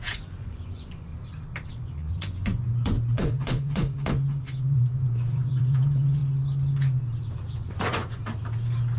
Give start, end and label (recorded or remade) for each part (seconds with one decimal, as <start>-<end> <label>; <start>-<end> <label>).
0.0-1.1 remade; 1.1-1.7 recorded; 1.7-6.2 remade; 6.2-7.5 recorded; 7.5-8.2 remade; 8.2-9.0 recorded

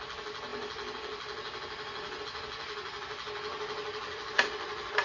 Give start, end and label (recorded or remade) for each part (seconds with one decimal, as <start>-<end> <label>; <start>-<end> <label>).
0.0-5.0 recorded